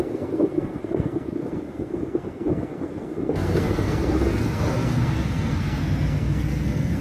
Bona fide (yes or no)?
no